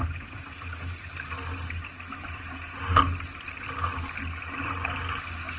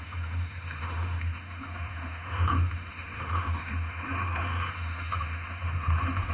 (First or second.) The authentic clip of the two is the first